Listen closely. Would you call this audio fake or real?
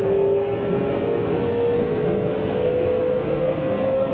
fake